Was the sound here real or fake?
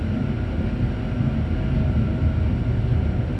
real